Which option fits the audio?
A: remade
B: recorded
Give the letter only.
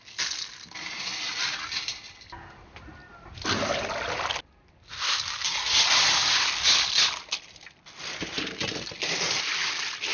B